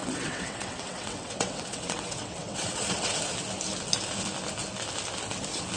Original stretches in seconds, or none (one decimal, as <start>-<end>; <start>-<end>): 3.2-5.8

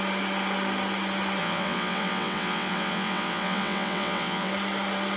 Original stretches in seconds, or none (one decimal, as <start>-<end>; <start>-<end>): 0.0-1.4; 4.5-5.2

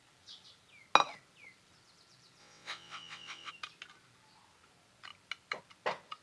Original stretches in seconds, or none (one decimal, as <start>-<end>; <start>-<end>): 0.0-2.4; 3.5-6.2

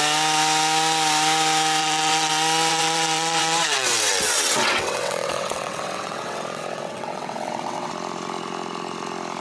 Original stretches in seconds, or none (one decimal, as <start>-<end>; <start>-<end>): 0.0-1.8; 2.3-2.7; 7.9-9.4

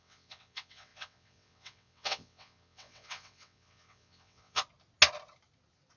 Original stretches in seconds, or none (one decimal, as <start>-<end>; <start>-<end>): 4.6-6.0

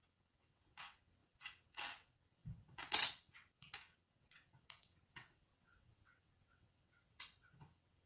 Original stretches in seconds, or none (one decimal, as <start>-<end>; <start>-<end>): none